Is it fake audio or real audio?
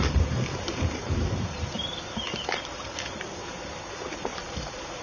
fake